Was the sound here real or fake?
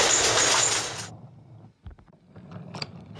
real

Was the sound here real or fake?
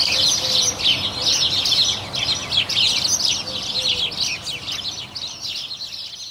real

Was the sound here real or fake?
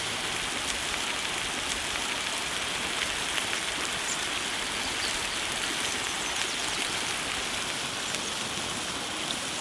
real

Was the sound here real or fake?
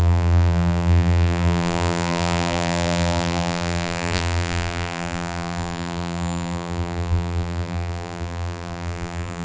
fake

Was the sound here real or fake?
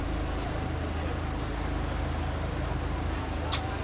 real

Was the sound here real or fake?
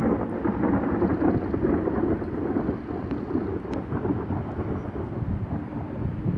real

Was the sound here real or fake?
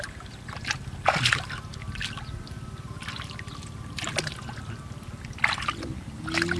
real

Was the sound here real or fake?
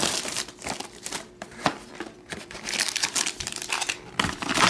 fake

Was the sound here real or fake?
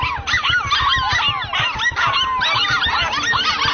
real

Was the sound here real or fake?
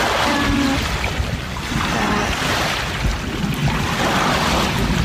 real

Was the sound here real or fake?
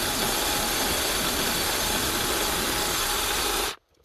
real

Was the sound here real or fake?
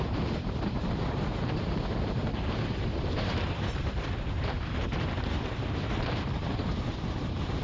fake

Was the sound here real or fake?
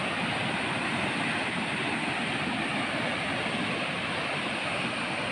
real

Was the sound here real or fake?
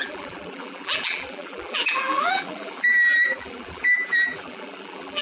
fake